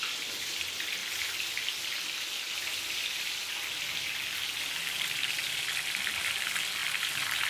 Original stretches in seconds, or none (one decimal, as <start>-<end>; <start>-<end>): 1.0-4.8; 6.8-7.5